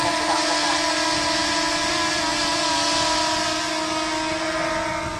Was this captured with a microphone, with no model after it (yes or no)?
yes